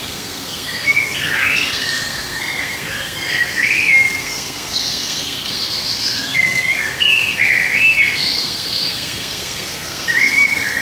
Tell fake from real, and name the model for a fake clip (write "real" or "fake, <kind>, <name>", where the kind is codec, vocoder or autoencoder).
fake, codec, SNAC